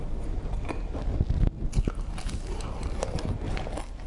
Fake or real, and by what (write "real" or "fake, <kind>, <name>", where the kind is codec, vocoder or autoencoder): real